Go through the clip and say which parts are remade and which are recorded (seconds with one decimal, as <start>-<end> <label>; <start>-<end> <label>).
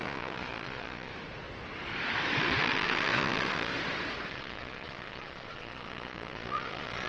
0.0-1.1 remade; 1.1-2.4 recorded; 2.4-3.7 remade; 3.7-4.3 recorded; 4.3-7.1 remade